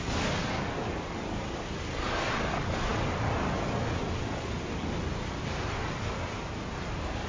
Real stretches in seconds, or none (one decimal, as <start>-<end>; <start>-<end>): 0.0-7.3